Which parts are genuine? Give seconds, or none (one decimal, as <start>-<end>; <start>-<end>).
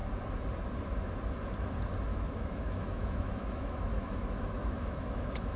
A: 0.0-2.1